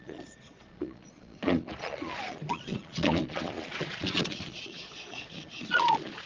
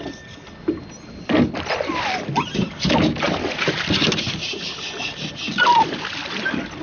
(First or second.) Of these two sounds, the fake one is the first